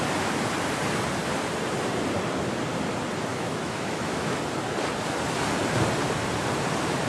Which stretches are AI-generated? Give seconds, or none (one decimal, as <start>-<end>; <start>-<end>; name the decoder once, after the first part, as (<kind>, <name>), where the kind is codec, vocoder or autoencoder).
3.3-4.4 (autoencoder, DAC-VAE)